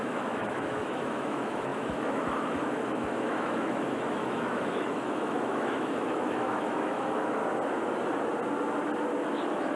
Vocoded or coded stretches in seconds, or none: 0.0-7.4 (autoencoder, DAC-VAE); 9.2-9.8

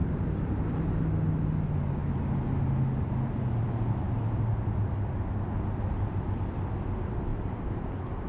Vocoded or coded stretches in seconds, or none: 0.0-1.0 (vocoder, BigVGAN v2); 7.3-8.3

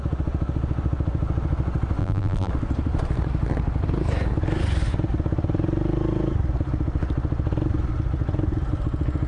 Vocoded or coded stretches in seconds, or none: 2.0-2.5 (vocoder, BigVGAN v2)

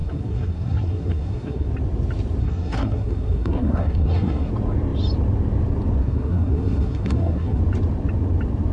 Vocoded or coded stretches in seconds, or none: 0.0-1.7 (codec, SNAC); 2.4-4.5; 6.0-7.6